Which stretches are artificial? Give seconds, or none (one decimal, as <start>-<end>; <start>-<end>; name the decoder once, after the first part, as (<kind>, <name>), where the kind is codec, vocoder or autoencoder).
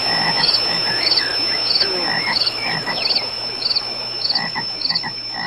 0.0-5.5 (autoencoder, DAC-VAE)